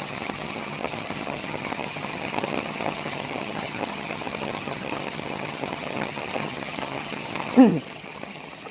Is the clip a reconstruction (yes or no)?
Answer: yes